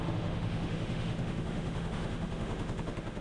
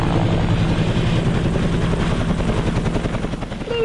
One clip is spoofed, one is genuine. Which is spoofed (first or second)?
first